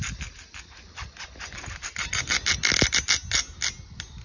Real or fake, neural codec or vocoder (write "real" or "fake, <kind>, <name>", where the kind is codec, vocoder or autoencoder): real